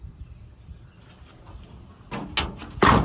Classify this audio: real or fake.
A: real